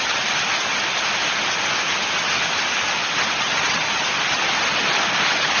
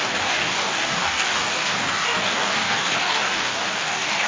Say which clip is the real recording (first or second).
first